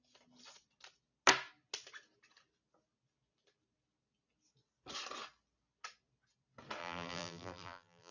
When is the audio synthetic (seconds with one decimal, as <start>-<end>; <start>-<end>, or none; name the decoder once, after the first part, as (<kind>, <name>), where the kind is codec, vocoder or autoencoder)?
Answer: 6.8-8.1 (vocoder, BigVGAN v2)